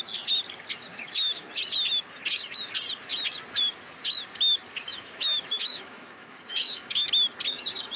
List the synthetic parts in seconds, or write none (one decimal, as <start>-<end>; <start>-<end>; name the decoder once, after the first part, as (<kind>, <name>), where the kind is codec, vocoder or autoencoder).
0.9-1.5 (autoencoder, DAC-VAE); 4.9-7.1